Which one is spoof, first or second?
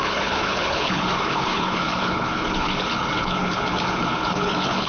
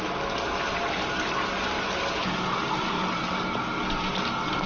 first